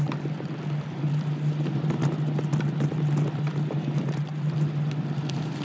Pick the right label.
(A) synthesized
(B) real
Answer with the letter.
B